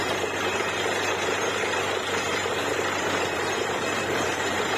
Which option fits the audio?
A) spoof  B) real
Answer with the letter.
A